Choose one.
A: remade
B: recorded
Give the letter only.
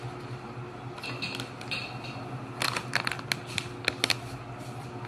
B